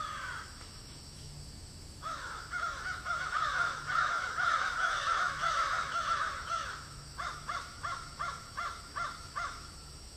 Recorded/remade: remade